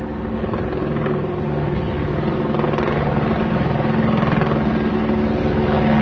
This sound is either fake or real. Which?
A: real